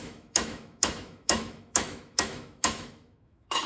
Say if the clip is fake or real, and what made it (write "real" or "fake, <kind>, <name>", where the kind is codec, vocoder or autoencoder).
fake, autoencoder, DAC-VAE